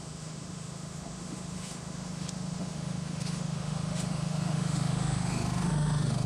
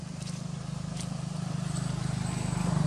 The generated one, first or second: first